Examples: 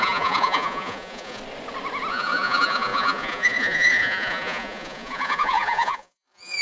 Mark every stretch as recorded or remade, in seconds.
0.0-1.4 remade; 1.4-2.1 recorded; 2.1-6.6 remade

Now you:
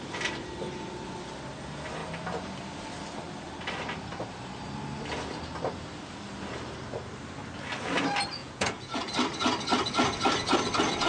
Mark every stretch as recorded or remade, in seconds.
0.0-8.4 recorded; 8.4-9.1 remade; 9.1-11.1 recorded

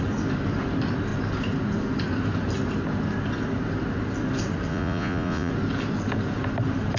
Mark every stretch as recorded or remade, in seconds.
0.0-4.7 recorded; 4.7-5.5 remade; 5.5-7.0 recorded

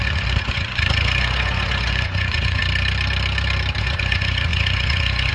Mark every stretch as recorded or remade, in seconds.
0.0-2.6 remade; 2.6-3.8 recorded; 3.8-5.3 remade

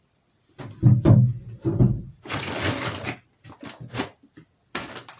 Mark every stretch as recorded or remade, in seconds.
0.0-2.0 recorded; 2.0-2.5 remade; 2.5-5.2 recorded

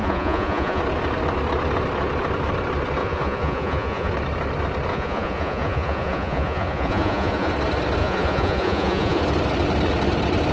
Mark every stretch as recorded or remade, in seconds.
0.0-0.8 remade; 0.8-3.0 recorded; 3.0-4.1 remade; 4.1-4.9 recorded; 4.9-7.5 remade; 7.5-8.0 recorded; 8.0-9.2 remade; 9.2-10.5 recorded

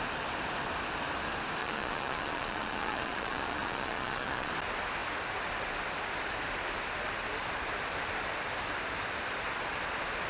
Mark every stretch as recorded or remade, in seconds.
0.0-1.6 recorded; 1.6-4.5 remade; 4.5-10.3 recorded

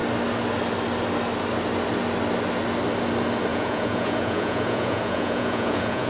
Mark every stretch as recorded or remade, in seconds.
0.0-3.5 recorded; 3.5-6.1 remade